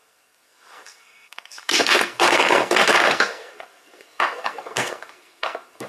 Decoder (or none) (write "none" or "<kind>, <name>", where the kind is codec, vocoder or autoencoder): codec, SNAC